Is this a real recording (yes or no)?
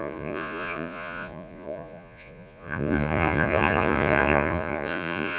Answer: no